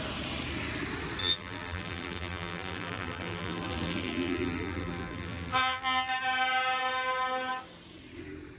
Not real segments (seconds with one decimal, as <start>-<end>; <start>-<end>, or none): 1.2-6.1